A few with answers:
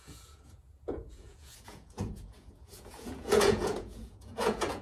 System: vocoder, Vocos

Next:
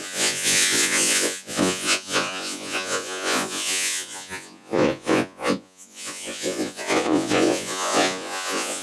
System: vocoder, Vocos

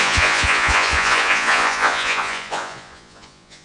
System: vocoder, Vocos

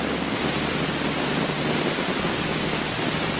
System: none